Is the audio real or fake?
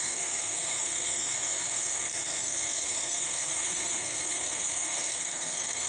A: fake